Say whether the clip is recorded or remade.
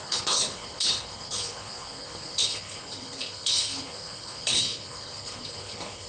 remade